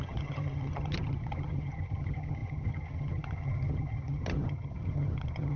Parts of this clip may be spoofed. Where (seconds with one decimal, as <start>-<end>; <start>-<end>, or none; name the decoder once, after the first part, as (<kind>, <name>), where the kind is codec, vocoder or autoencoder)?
0.0-5.6 (vocoder, HiFi-GAN)

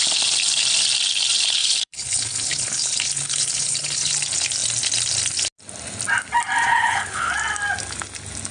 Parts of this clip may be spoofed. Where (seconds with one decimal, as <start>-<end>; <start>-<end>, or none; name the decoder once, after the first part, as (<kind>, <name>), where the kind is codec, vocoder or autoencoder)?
1.6-4.1 (codec, HILCodec); 6.7-7.3

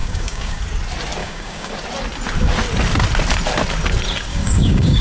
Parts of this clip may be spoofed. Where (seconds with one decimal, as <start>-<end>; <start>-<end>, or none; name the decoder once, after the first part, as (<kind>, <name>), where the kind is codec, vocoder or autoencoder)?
0.0-0.6 (codec, DAC); 1.2-1.7; 4.3-5.0

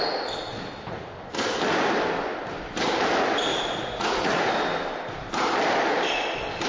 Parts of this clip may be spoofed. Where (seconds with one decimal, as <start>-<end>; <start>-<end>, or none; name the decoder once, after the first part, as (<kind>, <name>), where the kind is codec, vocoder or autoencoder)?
3.5-4.4 (vocoder, Vocos)

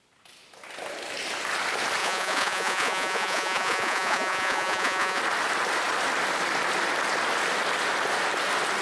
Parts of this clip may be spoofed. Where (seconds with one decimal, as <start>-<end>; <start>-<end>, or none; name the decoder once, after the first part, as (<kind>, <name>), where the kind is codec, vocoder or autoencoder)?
2.0-5.2 (vocoder, Vocos)